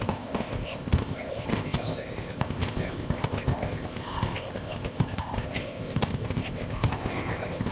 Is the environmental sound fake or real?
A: fake